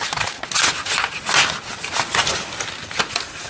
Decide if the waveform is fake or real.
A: real